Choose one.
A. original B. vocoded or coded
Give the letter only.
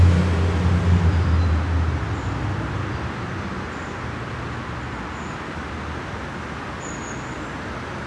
A